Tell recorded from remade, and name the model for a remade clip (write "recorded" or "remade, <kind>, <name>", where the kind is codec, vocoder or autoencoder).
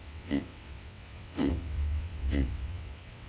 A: remade, vocoder, WaveNeXt